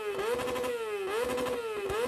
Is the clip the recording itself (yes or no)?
yes